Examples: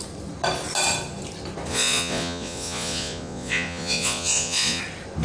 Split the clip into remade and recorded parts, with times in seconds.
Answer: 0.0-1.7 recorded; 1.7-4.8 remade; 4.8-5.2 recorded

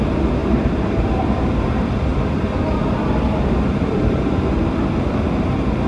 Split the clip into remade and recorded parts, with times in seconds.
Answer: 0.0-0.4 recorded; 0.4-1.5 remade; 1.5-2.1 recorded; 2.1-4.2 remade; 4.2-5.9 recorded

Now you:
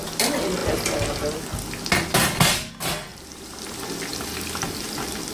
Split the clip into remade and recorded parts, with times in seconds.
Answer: 0.0-3.1 recorded; 3.1-3.6 remade; 3.6-5.3 recorded